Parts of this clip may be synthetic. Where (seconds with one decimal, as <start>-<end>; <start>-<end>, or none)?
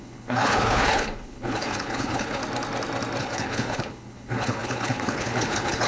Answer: 0.0-2.4; 3.2-5.9